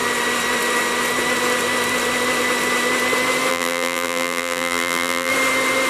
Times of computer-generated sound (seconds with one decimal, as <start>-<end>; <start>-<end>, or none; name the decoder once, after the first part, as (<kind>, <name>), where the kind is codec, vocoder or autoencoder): 3.5-5.3 (vocoder, BigVGAN v2)